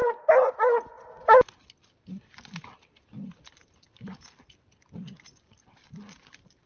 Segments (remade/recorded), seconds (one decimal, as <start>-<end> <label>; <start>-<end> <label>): 0.0-6.7 recorded